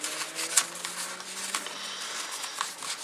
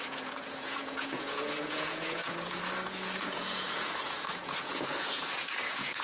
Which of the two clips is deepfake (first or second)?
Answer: second